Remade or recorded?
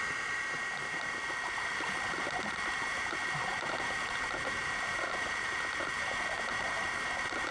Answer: remade